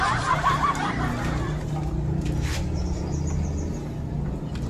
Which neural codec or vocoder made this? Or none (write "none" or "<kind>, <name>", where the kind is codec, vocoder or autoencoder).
none